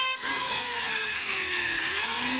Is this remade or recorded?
remade